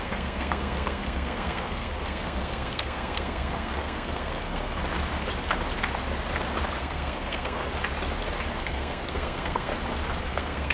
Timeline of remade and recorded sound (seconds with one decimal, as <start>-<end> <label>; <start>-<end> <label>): 0.0-4.8 remade; 4.8-6.8 recorded; 6.8-7.6 remade; 7.6-8.6 recorded; 8.6-9.7 remade; 9.7-10.2 recorded; 10.2-10.7 remade